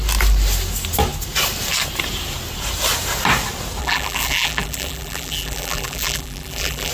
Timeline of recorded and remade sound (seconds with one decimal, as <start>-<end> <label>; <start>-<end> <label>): 0.0-3.8 recorded; 3.8-6.9 remade